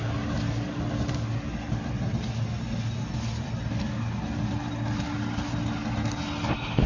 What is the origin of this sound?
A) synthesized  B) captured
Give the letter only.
B